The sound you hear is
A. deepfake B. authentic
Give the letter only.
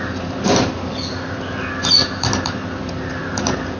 B